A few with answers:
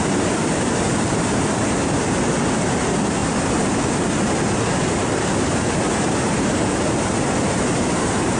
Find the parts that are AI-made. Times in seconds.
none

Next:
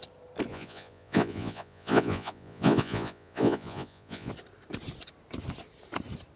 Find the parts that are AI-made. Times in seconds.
0.5-4.3

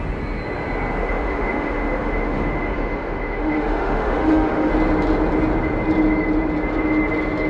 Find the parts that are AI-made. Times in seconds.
1.0-4.7